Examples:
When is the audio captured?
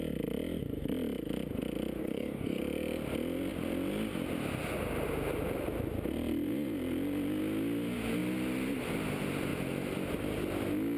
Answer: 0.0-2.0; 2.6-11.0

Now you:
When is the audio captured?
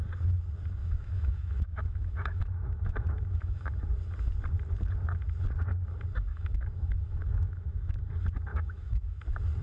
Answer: 0.0-0.8; 3.7-6.3; 8.0-8.5; 9.2-9.6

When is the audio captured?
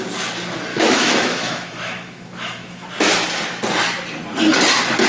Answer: 0.0-0.7; 2.9-5.1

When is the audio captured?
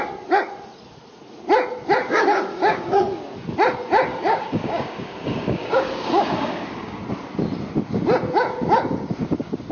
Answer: 0.0-2.0; 3.0-4.1; 7.0-9.7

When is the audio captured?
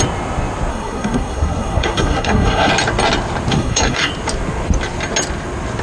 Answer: 0.0-0.7; 2.7-3.5; 4.1-5.8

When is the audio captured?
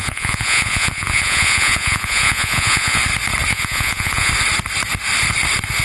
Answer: 3.0-3.5; 4.3-5.8